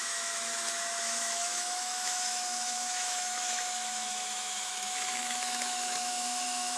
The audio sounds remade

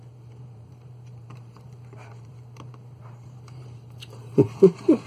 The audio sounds remade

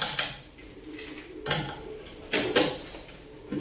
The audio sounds recorded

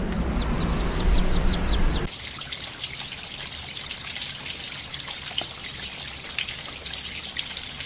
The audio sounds recorded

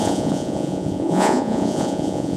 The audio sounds remade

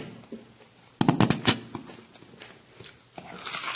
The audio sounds recorded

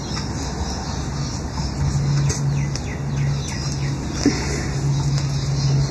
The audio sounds recorded